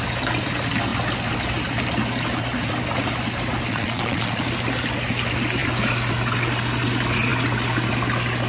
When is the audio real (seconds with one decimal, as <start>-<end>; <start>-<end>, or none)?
0.0-3.7; 4.4-8.5